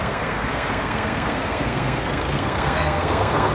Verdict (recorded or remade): remade